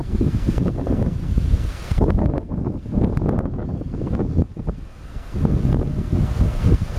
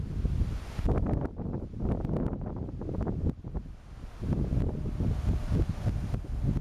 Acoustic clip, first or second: second